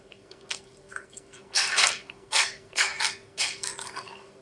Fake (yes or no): yes